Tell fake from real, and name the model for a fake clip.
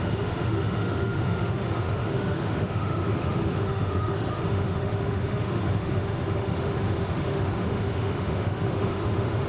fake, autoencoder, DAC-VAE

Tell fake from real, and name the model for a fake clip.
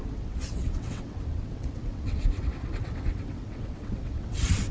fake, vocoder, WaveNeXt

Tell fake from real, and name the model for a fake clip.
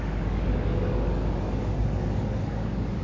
fake, codec, DAC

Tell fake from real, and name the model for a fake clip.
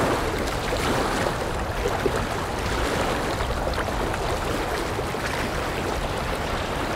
real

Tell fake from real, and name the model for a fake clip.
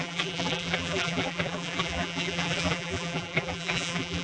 fake, vocoder, BigVGAN v2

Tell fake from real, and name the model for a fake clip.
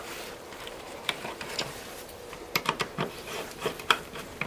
fake, vocoder, BigVGAN v2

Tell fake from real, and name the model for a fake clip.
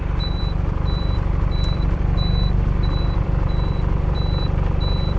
fake, vocoder, BigVGAN v2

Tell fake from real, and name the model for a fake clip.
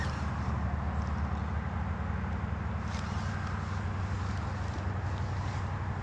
real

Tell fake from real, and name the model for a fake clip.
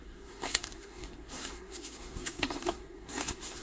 fake, codec, SNAC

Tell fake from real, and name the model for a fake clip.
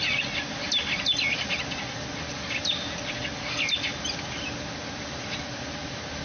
real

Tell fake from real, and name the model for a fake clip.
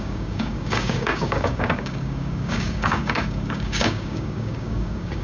fake, codec, DAC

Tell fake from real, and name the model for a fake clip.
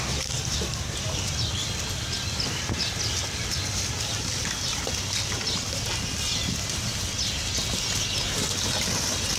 real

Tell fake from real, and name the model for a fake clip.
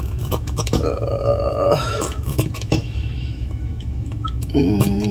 fake, autoencoder, DAC-VAE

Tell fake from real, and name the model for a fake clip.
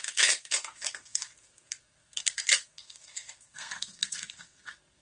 fake, codec, SNAC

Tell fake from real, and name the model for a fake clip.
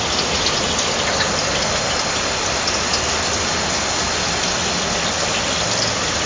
real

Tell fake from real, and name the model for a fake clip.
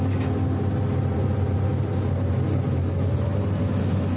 real